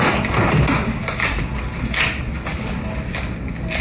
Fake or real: real